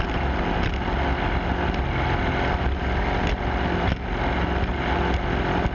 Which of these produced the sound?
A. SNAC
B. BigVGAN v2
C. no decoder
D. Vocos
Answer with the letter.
C